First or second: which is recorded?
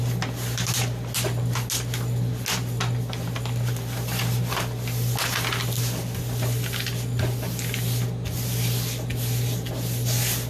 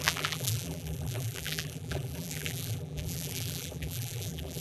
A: first